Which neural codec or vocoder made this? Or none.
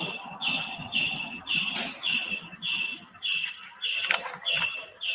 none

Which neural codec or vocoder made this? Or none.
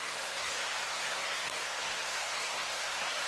codec, SNAC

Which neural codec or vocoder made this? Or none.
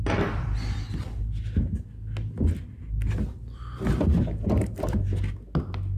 none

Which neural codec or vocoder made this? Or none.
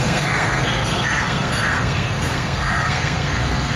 codec, SNAC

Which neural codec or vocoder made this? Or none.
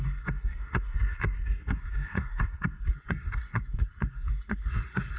codec, SNAC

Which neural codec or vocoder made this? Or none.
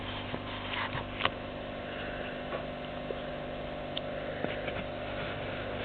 none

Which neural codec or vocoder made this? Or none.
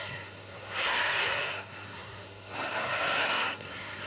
codec, SNAC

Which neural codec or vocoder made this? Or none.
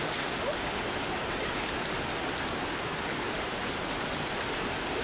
none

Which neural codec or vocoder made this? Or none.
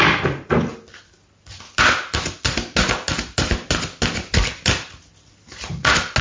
none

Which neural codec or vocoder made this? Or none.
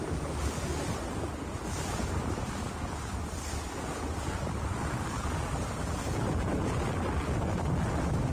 none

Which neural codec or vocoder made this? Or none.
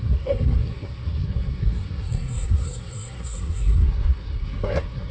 codec, SNAC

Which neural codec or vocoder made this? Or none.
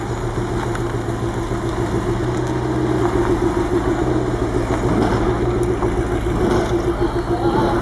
none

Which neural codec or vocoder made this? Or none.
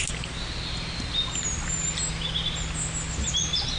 none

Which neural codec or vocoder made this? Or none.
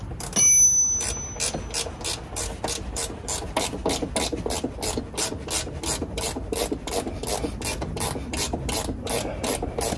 none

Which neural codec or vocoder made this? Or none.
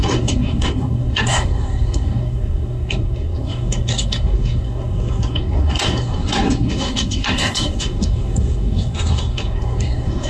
codec, SNAC